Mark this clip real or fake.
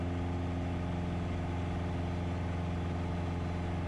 real